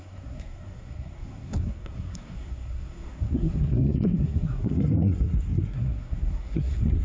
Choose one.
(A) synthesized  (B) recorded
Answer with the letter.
A